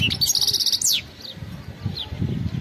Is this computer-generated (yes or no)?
no